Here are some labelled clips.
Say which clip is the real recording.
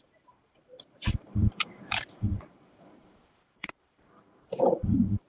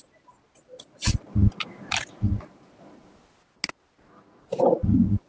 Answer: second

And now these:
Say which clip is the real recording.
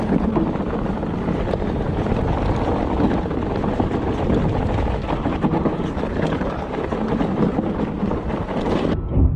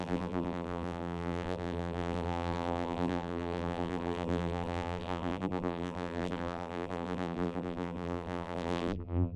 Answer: first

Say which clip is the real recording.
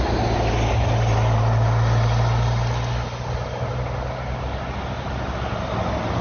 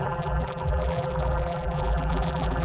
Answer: first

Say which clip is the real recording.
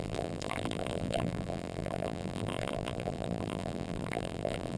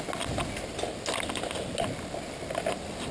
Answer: second